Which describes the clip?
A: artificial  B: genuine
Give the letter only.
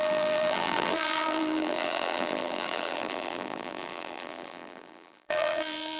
A